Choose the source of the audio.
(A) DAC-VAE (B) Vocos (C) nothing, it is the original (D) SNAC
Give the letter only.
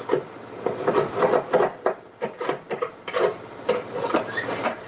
C